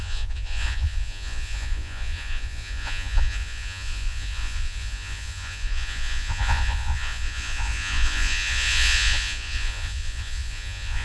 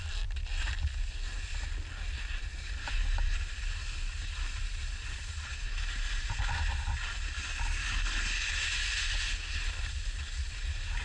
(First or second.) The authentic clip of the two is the second